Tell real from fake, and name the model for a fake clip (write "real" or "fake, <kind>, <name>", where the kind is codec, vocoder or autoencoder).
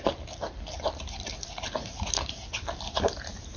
real